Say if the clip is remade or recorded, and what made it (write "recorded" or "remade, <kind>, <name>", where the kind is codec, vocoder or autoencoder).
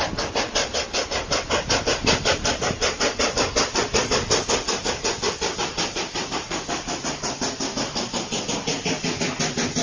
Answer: recorded